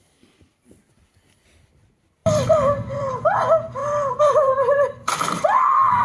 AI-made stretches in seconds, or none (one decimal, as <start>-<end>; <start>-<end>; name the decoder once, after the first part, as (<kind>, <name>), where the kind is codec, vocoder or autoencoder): 2.2-3.1 (vocoder, BigVGAN v2); 3.8-5.6